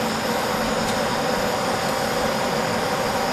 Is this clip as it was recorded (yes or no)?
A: yes